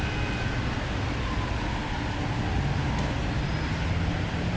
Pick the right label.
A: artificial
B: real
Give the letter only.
B